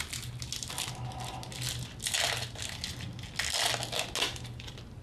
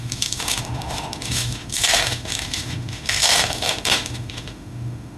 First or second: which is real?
first